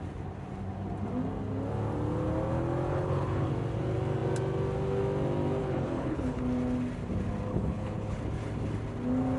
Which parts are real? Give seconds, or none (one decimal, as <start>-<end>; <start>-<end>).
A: 0.0-2.9; 3.5-5.6; 6.4-7.5; 8.2-9.4